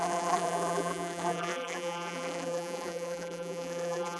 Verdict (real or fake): fake